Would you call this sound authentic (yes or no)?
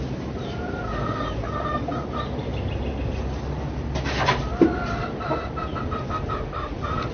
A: yes